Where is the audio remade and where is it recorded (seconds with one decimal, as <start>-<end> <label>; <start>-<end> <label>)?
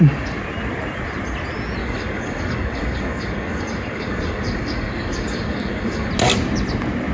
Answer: 0.0-1.8 recorded; 1.8-6.1 remade; 6.1-7.1 recorded